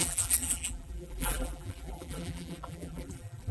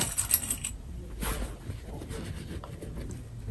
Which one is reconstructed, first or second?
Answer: first